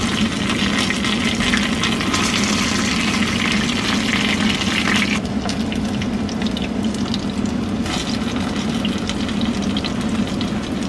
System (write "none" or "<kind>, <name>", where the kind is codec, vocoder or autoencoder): none